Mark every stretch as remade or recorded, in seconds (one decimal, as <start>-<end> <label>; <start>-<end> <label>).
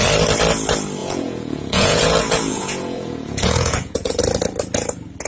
0.0-1.0 recorded; 1.0-4.2 remade; 4.2-5.3 recorded